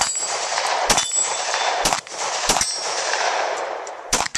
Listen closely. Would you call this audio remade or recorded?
remade